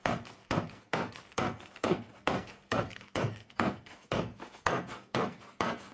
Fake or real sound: fake